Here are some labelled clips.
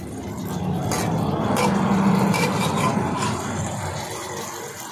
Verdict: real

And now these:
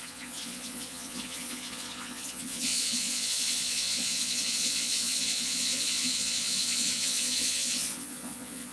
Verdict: fake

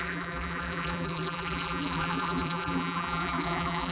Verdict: fake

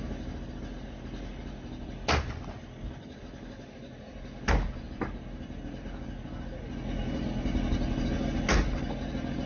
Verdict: real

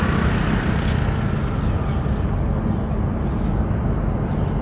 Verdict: real